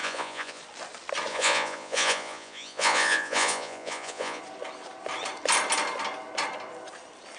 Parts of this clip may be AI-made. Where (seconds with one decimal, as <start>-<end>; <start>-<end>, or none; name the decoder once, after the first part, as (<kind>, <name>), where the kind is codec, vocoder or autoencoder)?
0.0-0.6 (vocoder, Vocos); 1.3-4.4